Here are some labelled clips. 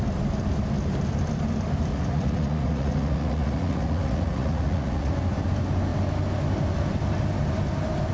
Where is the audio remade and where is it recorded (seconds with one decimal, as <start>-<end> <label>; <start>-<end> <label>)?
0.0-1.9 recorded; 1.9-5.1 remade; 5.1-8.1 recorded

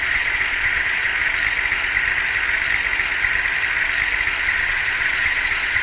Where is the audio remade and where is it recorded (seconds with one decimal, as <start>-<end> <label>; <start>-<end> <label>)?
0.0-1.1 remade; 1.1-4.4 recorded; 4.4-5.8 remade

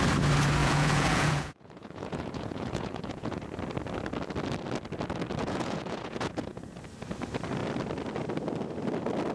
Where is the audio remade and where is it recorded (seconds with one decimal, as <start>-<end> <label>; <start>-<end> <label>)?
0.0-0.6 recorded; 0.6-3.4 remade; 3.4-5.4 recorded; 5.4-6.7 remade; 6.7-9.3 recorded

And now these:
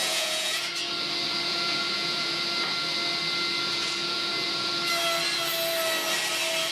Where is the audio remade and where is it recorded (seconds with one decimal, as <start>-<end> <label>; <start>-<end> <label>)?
0.0-0.7 remade; 0.7-1.5 recorded; 1.5-2.4 remade; 2.4-3.8 recorded; 3.8-4.7 remade; 4.7-6.7 recorded

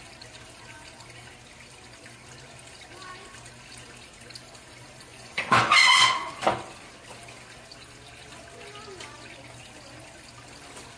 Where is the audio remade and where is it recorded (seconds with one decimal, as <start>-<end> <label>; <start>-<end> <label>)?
0.0-5.1 recorded; 5.1-6.4 remade; 6.4-11.0 recorded

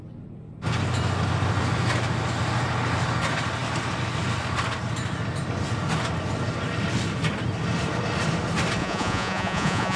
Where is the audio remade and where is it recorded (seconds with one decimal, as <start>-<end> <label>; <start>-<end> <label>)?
0.0-8.8 recorded; 8.8-10.0 remade

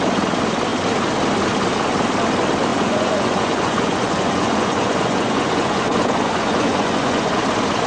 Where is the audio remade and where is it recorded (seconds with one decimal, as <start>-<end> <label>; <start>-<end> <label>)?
0.0-2.7 recorded; 2.7-7.4 remade; 7.4-7.9 recorded